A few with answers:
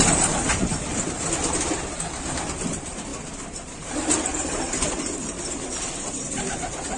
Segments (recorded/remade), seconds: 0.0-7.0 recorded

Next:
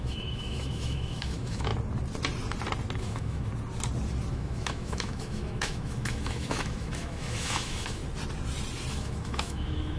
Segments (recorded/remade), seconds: 0.0-1.7 remade; 1.7-3.0 recorded; 3.0-3.5 remade; 3.5-4.3 recorded; 4.3-8.0 remade; 8.0-8.9 recorded; 8.9-10.0 remade

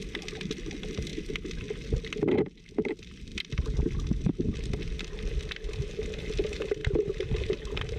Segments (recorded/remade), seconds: 0.0-8.0 recorded

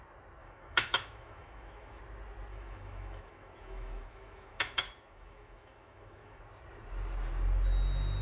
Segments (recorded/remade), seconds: 0.0-0.4 recorded; 0.4-2.0 remade; 2.0-2.5 recorded; 2.5-6.4 remade; 6.4-8.2 recorded

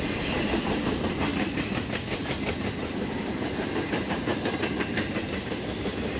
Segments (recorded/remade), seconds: 0.0-6.2 recorded

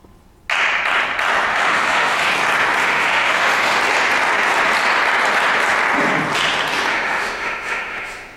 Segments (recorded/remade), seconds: 0.0-1.5 recorded; 1.5-2.3 remade; 2.3-2.8 recorded; 2.8-3.8 remade; 3.8-6.9 recorded; 6.9-8.4 remade

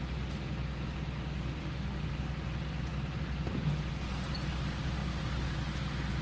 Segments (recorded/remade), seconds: 0.0-1.6 recorded; 1.6-2.1 remade; 2.1-6.2 recorded

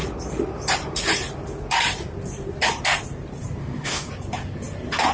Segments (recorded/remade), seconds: 0.0-3.6 recorded; 3.6-4.1 remade; 4.1-5.1 recorded